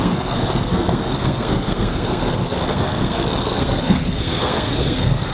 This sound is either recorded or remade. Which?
remade